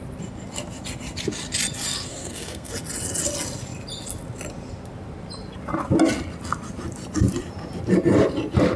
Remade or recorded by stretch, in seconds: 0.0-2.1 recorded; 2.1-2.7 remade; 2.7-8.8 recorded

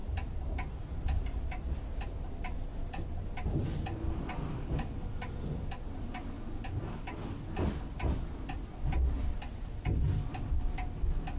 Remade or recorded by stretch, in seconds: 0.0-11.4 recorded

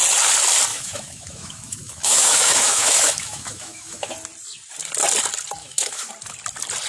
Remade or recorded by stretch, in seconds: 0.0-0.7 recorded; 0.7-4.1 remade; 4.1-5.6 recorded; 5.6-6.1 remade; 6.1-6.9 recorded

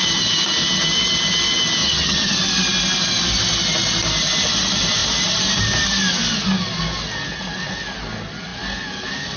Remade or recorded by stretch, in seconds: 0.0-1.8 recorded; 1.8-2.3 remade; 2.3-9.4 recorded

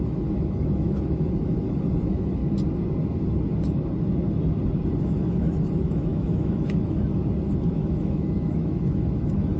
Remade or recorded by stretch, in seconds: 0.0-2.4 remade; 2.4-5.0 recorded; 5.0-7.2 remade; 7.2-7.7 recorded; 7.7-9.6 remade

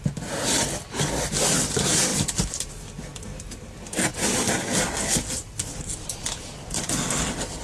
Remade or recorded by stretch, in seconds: 0.0-2.1 recorded; 2.1-2.7 remade; 2.7-7.6 recorded

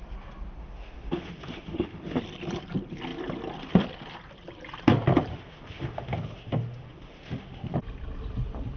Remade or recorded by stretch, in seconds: 0.0-0.6 recorded; 0.6-2.2 remade; 2.2-5.3 recorded; 5.3-7.7 remade; 7.7-8.8 recorded

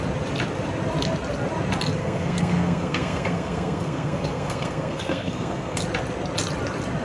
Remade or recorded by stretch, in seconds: 0.0-2.0 recorded; 2.0-5.8 remade; 5.8-7.0 recorded